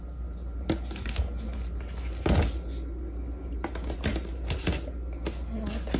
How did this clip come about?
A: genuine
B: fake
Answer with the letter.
A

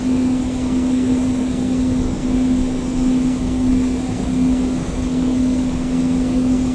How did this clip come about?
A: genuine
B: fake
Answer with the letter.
B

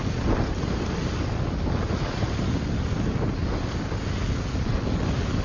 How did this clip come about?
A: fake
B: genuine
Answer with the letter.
B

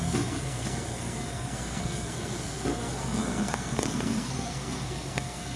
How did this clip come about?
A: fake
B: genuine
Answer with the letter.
A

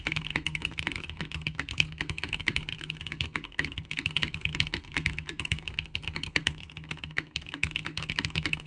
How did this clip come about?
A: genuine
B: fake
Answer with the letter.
B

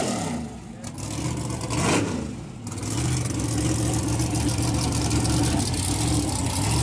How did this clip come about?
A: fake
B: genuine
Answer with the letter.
B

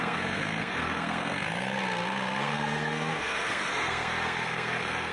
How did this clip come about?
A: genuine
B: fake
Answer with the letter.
B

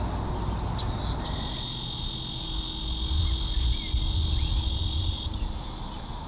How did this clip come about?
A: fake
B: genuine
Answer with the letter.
B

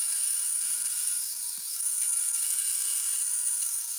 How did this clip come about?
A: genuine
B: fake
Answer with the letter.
B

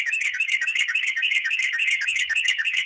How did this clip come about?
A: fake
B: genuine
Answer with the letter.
A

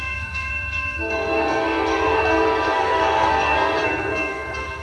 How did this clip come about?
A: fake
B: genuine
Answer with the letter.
A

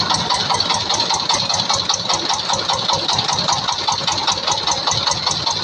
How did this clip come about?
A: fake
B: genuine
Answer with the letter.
B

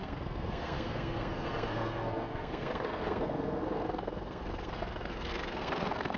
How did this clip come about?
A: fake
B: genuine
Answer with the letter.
A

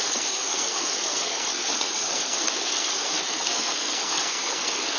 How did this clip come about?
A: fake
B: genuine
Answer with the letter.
A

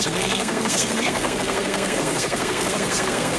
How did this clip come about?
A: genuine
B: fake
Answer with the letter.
B